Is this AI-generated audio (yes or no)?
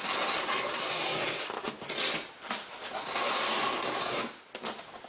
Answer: no